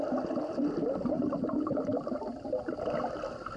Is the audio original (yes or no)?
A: yes